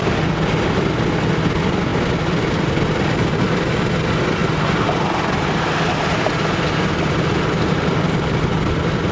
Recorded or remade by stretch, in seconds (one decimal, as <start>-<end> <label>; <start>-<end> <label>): 0.0-9.1 recorded